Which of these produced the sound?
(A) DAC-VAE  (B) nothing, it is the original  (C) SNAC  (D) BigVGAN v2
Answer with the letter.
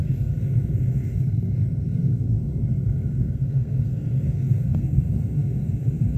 C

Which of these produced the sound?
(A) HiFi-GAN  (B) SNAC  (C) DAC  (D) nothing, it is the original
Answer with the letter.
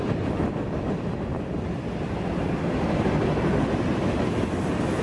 D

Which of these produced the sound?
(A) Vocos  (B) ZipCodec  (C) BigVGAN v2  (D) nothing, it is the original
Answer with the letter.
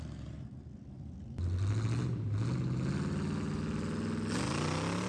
D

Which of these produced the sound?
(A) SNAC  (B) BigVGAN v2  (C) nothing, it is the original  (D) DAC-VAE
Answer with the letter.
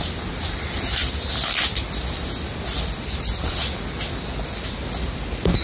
C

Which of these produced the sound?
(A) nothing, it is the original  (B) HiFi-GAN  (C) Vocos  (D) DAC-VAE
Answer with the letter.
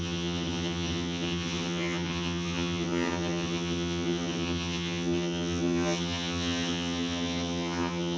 B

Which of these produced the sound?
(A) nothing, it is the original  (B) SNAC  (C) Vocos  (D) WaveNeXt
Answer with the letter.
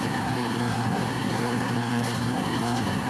B